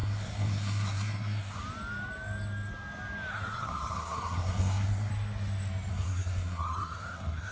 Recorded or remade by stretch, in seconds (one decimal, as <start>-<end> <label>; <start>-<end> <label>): 0.0-1.6 remade; 1.6-3.3 recorded; 3.3-5.1 remade; 5.1-5.9 recorded; 5.9-7.5 remade